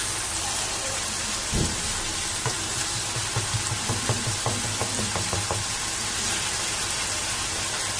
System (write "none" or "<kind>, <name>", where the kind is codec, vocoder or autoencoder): none